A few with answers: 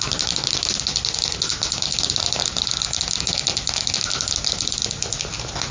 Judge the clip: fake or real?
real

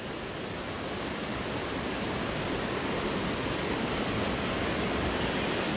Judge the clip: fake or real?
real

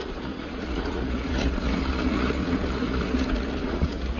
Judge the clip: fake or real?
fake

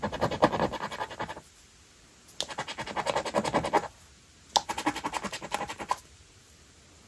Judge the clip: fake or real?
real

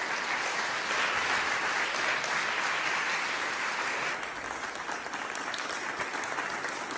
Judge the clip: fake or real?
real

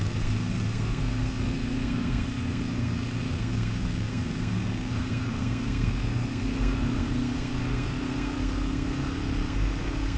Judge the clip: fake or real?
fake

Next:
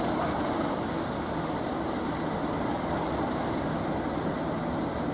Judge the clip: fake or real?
real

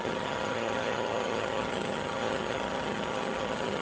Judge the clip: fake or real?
fake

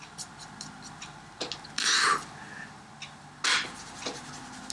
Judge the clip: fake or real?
real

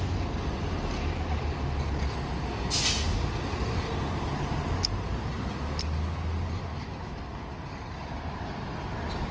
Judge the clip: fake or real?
real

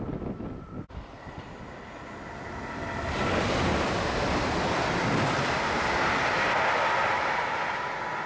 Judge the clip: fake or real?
real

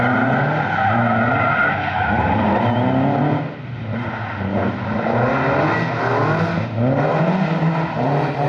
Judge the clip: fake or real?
real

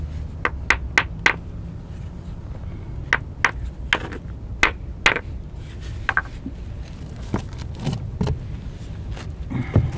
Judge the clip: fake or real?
real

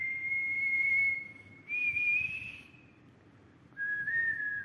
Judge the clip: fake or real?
fake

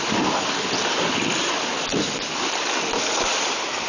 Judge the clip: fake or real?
real